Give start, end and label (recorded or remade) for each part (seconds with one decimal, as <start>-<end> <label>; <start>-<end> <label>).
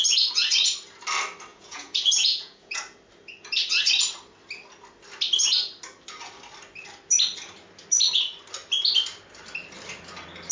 0.0-1.5 recorded; 1.5-2.8 remade; 2.8-10.5 recorded